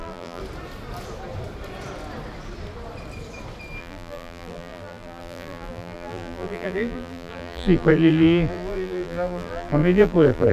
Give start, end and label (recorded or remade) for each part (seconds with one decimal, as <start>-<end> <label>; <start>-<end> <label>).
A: 0.0-0.4 remade; 0.4-3.8 recorded; 3.8-10.5 remade